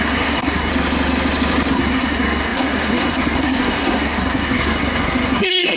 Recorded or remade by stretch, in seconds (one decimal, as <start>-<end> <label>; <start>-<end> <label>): 0.0-0.7 remade; 0.7-1.7 recorded; 1.7-5.8 remade